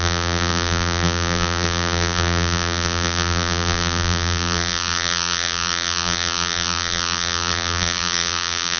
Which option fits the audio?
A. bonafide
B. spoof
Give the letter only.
B